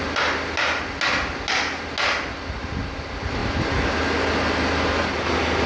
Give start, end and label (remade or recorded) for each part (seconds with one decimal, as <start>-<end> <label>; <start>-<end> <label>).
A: 0.0-5.7 recorded